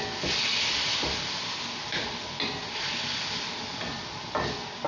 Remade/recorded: recorded